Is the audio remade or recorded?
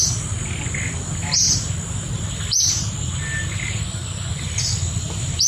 recorded